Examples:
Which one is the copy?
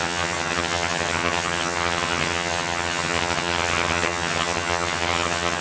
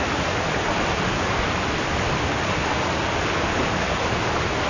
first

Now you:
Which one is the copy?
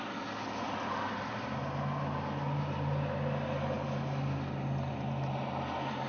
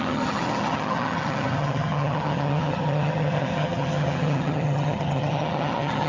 second